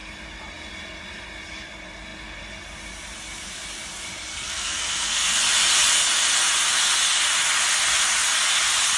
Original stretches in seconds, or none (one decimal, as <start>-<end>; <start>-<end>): 0.0-4.3; 5.4-9.0